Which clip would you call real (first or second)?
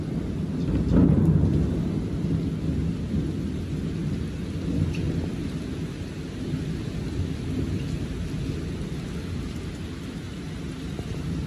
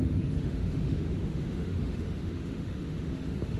first